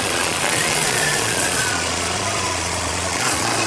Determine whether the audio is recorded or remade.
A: remade